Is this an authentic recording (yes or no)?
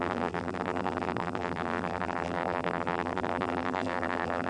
no